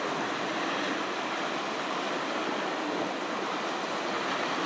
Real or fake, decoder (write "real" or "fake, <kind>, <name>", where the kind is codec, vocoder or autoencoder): real